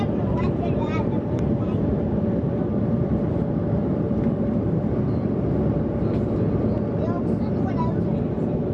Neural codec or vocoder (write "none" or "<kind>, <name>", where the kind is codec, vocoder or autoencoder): vocoder, BigVGAN v2